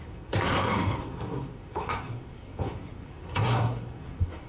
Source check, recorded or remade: remade